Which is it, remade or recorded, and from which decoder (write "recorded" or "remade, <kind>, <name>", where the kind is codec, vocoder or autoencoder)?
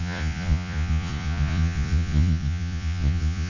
remade, vocoder, Vocos